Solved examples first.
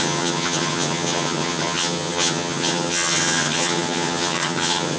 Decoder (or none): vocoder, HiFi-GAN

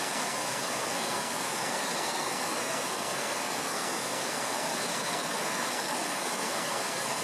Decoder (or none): codec, SNAC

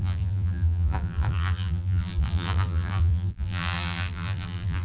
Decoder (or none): vocoder, BigVGAN v2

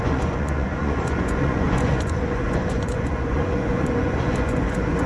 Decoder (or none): vocoder, Vocos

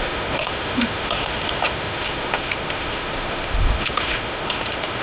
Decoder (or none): autoencoder, DAC-VAE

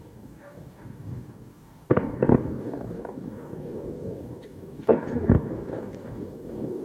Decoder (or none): codec, DAC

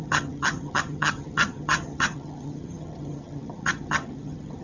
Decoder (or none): vocoder, HiFi-GAN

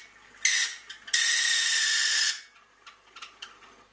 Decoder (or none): none